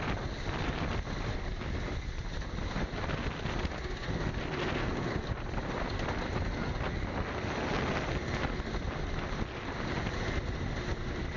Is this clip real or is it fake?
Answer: real